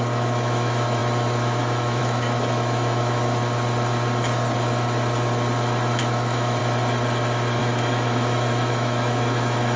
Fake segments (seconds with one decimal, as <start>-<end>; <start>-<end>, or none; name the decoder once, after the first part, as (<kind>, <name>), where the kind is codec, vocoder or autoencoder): 0.0-3.4 (autoencoder, DAC-VAE); 6.0-6.6; 7.6-9.8

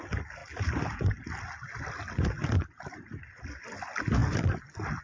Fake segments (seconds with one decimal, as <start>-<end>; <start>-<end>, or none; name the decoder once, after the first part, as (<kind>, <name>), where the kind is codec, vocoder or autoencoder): none

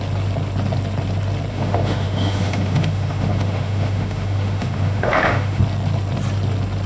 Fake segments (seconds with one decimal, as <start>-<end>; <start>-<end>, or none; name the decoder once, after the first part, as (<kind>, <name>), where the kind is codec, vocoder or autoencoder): 1.5-5.6 (autoencoder, DAC-VAE)